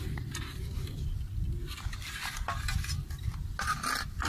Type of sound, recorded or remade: recorded